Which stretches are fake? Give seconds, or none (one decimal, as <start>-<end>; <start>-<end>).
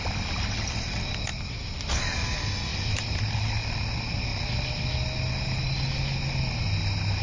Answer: 1.3-1.9; 2.7-3.8; 4.3-4.8